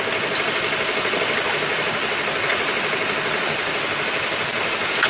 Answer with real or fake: real